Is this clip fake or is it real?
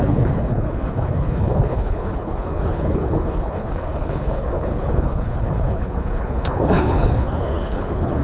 fake